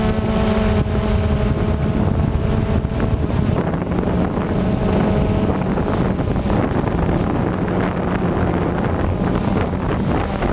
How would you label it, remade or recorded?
recorded